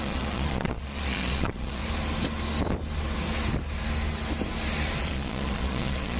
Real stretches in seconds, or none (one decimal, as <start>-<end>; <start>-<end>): 1.8-5.0